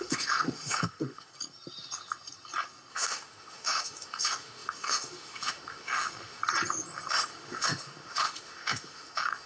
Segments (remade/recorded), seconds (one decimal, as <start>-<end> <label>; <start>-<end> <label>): 0.0-1.3 remade; 1.3-2.9 recorded; 2.9-6.4 remade; 6.4-7.1 recorded; 7.1-9.5 remade